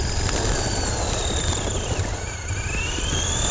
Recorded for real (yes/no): yes